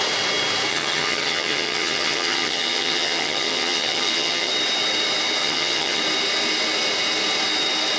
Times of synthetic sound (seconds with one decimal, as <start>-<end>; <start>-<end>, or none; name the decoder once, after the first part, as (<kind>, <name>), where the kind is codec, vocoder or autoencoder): 0.7-4.5 (vocoder, HiFi-GAN); 5.4-6.0